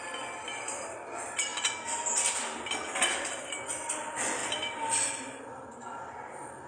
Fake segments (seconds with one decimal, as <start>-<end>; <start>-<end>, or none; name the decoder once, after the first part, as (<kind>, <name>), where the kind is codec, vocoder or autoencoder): 4.4-5.1 (vocoder, BigVGAN v2)

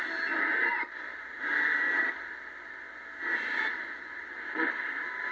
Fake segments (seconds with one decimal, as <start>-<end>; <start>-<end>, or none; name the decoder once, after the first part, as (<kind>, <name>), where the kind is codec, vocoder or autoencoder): none

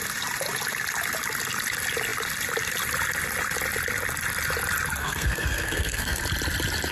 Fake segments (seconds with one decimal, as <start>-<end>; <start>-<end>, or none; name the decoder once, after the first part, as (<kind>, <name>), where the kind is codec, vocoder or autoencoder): 5.0-6.2 (codec, SNAC)

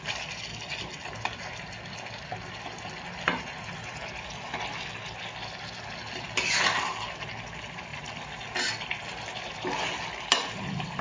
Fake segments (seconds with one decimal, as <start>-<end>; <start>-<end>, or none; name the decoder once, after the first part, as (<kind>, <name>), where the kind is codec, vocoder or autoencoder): none